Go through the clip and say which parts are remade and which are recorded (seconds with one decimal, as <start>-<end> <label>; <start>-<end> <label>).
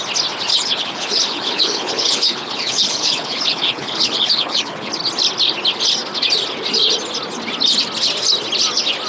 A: 0.0-0.5 recorded; 0.5-4.9 remade; 4.9-9.1 recorded